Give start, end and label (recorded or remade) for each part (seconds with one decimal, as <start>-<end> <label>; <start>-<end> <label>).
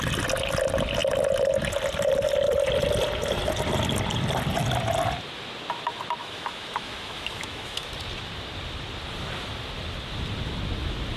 0.0-6.2 recorded; 6.2-7.9 remade; 7.9-11.2 recorded